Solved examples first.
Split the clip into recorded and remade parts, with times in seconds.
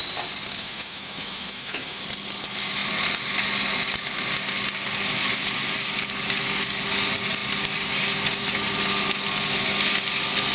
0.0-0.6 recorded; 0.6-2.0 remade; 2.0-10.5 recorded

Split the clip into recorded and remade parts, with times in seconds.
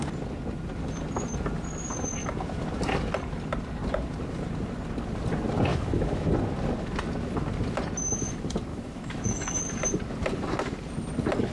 0.0-5.7 recorded; 5.7-6.3 remade; 6.3-8.7 recorded; 8.7-9.6 remade; 9.6-11.5 recorded